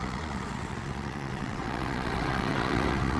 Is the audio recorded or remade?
remade